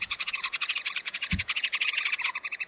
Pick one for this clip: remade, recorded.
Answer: remade